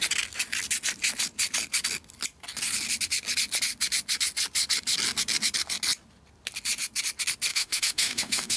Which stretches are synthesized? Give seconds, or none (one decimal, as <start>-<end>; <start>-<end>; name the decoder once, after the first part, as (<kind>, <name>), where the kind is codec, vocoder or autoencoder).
7.5-8.6 (autoencoder, DAC-VAE)